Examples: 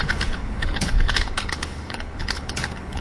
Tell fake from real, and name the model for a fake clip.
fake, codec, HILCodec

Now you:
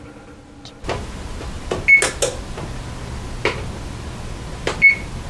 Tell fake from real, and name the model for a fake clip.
real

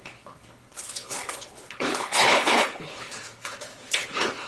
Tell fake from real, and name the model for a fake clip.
fake, codec, HILCodec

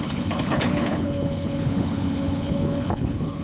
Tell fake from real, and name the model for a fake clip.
fake, codec, HILCodec